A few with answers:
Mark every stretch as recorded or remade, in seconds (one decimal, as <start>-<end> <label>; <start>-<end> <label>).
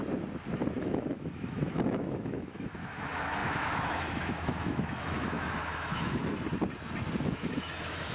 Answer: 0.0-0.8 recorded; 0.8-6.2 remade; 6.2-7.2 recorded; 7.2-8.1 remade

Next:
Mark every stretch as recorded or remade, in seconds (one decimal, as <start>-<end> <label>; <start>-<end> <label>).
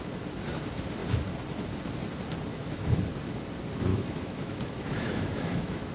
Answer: 0.0-2.5 recorded; 2.5-3.0 remade; 3.0-3.9 recorded; 3.9-5.9 remade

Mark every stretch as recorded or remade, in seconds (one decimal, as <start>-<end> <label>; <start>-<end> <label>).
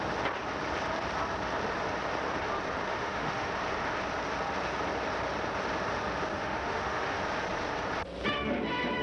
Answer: 0.0-2.9 recorded; 2.9-3.5 remade; 3.5-6.3 recorded; 6.3-7.2 remade; 7.2-9.0 recorded